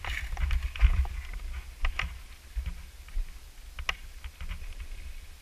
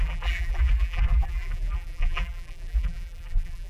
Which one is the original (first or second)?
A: first